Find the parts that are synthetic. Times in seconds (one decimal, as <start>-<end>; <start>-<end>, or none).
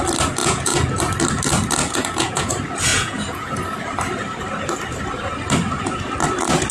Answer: 0.4-1.0; 1.8-2.5; 2.9-3.5